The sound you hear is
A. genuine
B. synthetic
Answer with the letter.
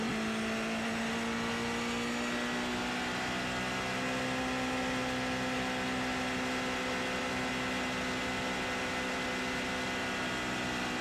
A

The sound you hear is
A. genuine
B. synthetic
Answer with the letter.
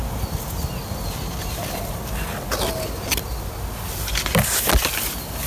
A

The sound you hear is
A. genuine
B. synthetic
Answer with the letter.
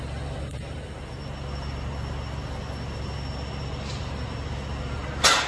A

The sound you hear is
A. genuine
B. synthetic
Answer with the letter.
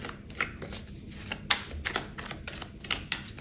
A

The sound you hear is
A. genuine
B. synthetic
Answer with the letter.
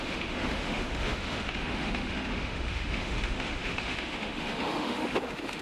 B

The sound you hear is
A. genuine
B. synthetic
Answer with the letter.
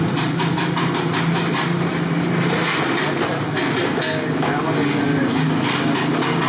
A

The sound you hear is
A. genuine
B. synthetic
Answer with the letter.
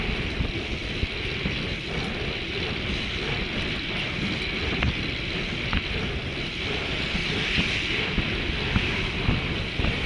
A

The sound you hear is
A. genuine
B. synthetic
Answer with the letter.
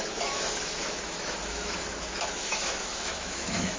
B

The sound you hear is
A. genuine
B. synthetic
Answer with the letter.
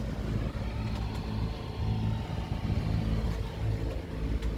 A